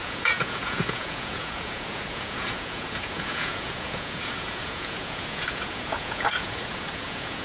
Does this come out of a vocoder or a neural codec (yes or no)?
yes